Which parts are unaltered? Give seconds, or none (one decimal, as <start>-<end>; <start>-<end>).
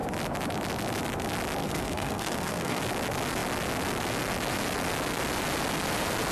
0.0-1.6; 2.8-6.3